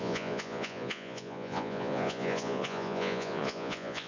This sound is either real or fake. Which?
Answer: fake